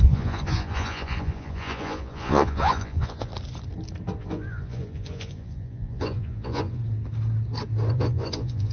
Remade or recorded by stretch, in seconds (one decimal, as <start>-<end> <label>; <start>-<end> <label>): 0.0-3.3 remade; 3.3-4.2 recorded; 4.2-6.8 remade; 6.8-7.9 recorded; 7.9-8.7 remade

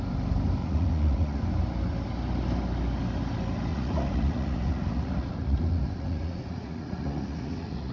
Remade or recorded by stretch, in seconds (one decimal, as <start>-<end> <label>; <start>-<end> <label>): 0.0-0.6 recorded; 0.6-1.4 remade; 1.4-3.7 recorded; 3.7-7.9 remade

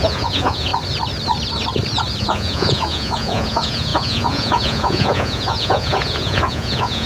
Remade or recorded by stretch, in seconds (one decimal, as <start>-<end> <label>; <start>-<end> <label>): 0.0-0.7 remade; 0.7-2.2 recorded; 2.2-7.1 remade